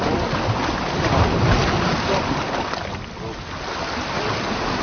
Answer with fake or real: real